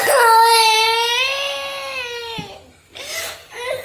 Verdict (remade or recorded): recorded